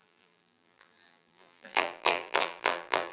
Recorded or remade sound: remade